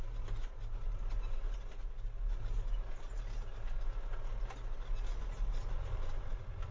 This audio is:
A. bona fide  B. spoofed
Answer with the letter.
A